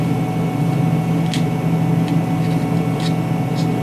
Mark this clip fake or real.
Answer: real